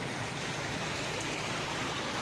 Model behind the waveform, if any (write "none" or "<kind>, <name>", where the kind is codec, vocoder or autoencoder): none